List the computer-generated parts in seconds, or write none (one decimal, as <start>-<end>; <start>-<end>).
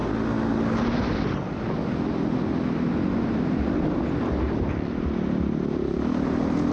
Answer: none